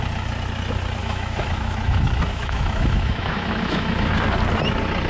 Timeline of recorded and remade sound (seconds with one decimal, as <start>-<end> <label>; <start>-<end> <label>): 0.0-1.0 recorded; 1.0-4.1 remade; 4.1-5.1 recorded